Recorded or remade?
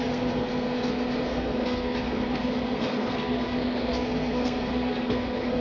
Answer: remade